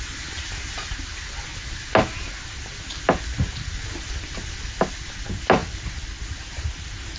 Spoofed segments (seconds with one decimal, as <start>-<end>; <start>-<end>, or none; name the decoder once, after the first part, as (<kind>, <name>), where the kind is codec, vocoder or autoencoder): none